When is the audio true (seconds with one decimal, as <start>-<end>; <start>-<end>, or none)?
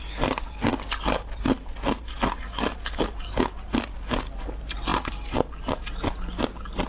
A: 0.0-6.9